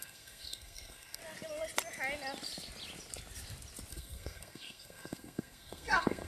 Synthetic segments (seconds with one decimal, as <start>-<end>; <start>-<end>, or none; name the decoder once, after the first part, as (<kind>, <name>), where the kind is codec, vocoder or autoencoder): 0.0-1.2 (codec, SNAC); 3.9-6.3